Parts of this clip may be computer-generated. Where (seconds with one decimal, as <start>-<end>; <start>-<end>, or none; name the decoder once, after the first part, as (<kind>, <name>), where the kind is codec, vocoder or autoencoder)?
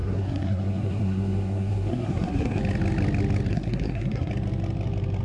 0.0-2.6 (codec, SNAC); 3.5-4.3